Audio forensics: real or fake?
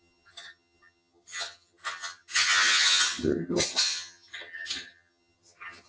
fake